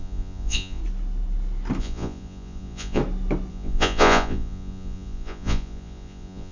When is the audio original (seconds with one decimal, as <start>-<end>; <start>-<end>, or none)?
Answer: 0.8-1.8; 3.0-3.5